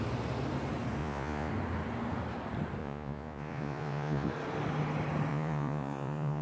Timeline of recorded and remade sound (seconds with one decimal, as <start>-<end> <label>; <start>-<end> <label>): 0.0-1.0 recorded; 1.0-1.5 remade; 1.5-2.8 recorded; 2.8-4.3 remade; 4.3-5.3 recorded; 5.3-6.4 remade